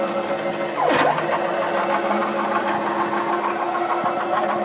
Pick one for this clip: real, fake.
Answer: real